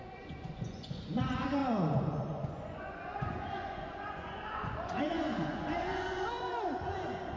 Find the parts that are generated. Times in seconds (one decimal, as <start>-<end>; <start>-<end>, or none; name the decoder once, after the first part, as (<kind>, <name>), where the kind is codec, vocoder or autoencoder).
0.0-7.4 (vocoder, Vocos)